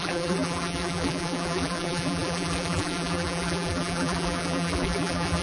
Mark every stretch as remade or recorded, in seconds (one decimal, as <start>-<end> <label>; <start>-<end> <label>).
0.0-5.4 remade